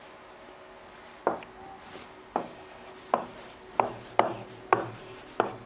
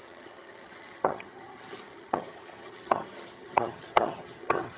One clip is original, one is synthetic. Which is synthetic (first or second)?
second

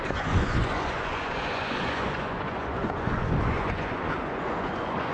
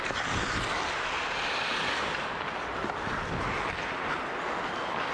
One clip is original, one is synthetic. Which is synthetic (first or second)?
first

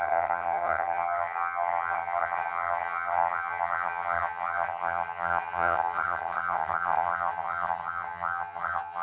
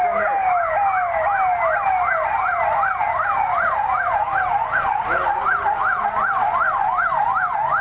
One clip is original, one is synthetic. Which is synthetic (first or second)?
first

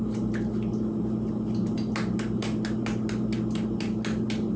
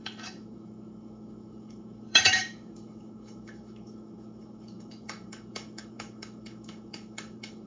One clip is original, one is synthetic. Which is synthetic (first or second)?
second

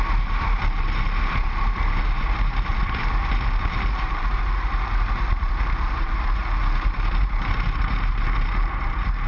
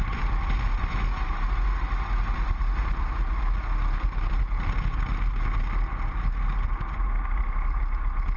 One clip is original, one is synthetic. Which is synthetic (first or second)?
first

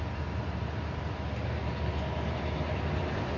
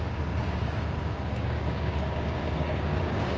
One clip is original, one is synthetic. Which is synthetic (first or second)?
second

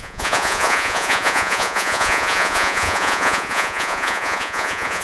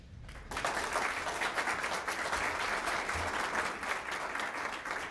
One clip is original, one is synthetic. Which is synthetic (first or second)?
first